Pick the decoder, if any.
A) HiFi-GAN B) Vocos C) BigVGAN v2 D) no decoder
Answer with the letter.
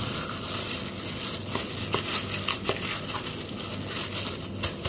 D